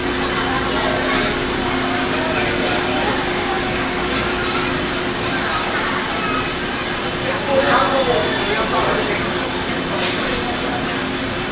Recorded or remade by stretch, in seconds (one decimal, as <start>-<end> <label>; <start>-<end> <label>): 0.0-2.9 recorded; 2.9-4.3 remade; 4.3-11.5 recorded